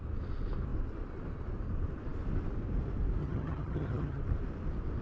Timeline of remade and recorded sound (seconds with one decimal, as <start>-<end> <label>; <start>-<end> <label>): 0.0-3.2 recorded; 3.2-4.2 remade; 4.2-5.0 recorded